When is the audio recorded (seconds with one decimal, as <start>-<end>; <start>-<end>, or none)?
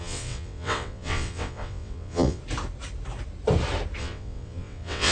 2.4-4.0